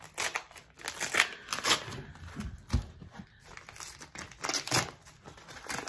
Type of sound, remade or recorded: recorded